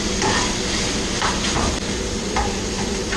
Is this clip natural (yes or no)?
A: yes